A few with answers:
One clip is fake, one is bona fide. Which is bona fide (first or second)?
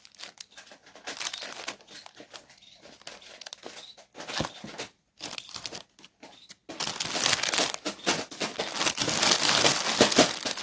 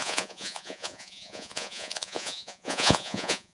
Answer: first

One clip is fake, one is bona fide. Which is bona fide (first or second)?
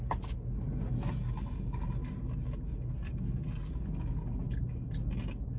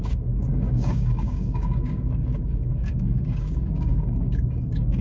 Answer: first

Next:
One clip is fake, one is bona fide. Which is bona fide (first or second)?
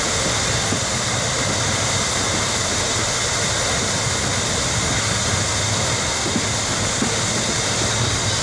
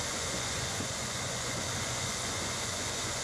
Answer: first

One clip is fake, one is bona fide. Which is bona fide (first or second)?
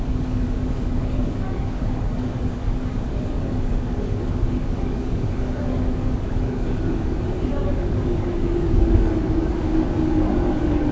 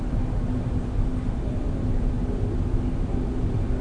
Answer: second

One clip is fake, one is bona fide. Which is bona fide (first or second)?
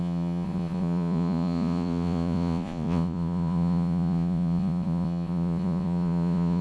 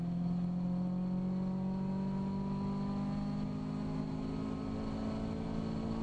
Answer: second